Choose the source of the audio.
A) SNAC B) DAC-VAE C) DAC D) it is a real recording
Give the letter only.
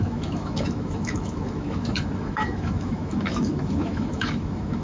B